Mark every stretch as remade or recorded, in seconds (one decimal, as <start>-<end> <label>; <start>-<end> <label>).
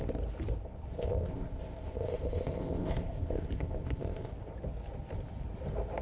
0.0-0.9 recorded; 0.9-4.3 remade; 4.3-6.0 recorded